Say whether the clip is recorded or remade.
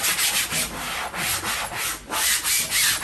recorded